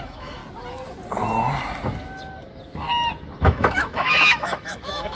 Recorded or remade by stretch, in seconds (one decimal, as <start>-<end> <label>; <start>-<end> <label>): 0.0-0.4 remade; 0.4-3.4 recorded; 3.4-5.1 remade